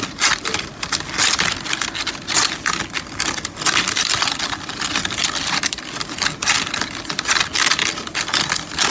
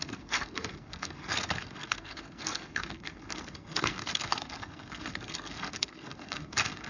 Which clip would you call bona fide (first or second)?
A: first